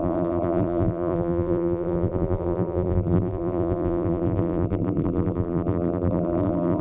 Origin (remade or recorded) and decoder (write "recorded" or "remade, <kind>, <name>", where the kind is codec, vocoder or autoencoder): remade, vocoder, BigVGAN v2